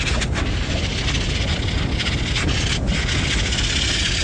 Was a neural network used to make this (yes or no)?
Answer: no